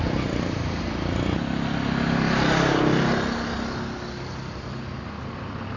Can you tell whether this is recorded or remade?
recorded